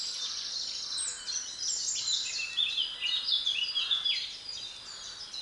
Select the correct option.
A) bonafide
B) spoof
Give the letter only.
A